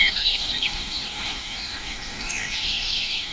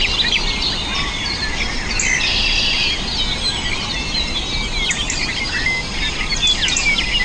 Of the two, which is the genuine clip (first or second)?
second